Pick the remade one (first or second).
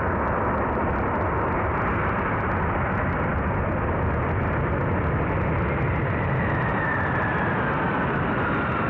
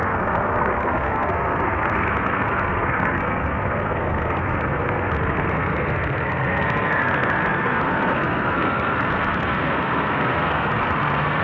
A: second